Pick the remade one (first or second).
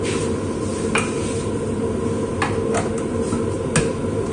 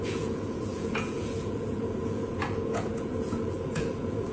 second